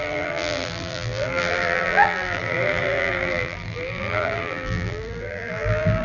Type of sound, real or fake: fake